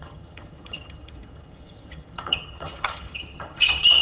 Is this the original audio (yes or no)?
no